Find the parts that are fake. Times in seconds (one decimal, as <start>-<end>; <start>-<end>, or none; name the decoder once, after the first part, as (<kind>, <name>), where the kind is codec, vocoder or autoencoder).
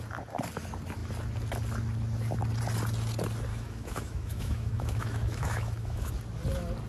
3.5-6.1 (autoencoder, DAC-VAE)